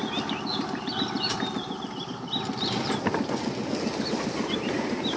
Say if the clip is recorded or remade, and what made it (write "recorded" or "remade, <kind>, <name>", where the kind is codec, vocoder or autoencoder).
recorded